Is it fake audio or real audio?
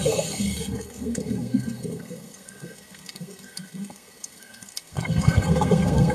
fake